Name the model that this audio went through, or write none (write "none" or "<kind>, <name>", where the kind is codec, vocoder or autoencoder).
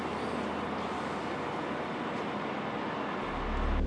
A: none